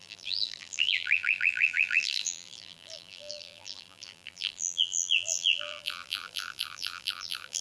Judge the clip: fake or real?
fake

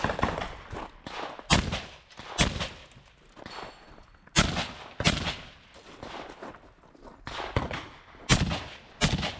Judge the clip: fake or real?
real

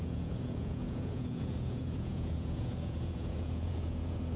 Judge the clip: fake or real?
fake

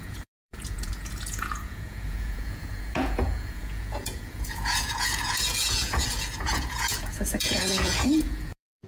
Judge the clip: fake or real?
fake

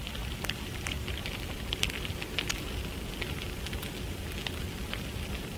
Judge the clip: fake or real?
real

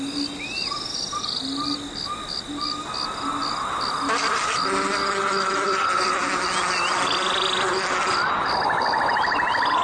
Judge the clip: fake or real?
real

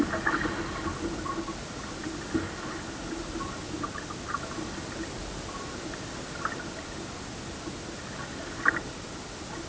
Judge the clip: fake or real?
real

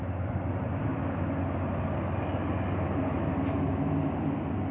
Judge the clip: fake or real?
real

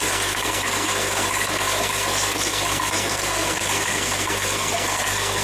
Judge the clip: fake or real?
fake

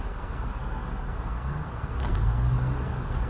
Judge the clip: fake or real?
fake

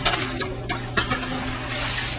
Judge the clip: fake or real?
real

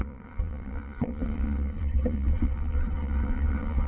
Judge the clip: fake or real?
fake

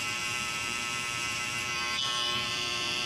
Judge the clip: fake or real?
fake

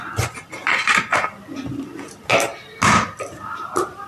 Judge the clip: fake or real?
real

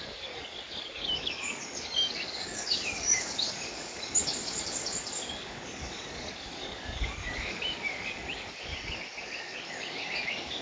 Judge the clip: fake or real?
fake